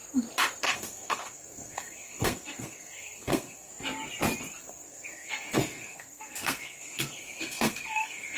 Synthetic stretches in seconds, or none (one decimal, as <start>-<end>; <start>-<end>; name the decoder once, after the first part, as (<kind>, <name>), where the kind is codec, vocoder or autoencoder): 0.6-3.7 (codec, SNAC); 4.6-8.4